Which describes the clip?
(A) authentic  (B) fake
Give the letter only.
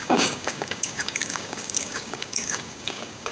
B